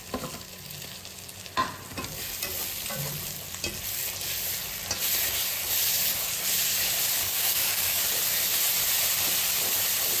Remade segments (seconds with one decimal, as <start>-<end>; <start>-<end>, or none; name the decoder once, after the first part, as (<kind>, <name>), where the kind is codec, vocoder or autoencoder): 7.2-8.0 (codec, DAC)